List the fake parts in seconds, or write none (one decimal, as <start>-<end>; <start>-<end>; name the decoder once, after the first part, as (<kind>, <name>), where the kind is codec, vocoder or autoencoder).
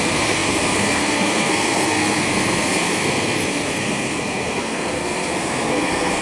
0.0-6.2 (codec, SNAC)